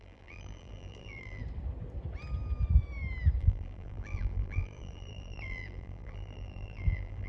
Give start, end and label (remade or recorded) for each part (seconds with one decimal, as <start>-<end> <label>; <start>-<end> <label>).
0.0-1.4 remade; 1.4-3.4 recorded; 3.4-7.3 remade